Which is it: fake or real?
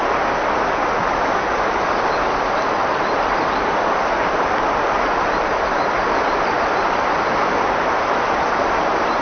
real